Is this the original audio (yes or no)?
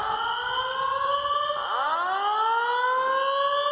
yes